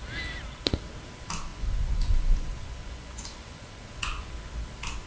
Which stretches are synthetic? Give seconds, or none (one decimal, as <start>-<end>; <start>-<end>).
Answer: 1.5-4.3